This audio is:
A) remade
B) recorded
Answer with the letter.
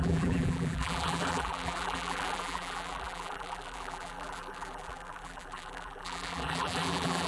A